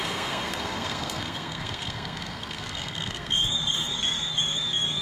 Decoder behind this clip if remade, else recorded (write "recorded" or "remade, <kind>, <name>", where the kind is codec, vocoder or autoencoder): remade, codec, SNAC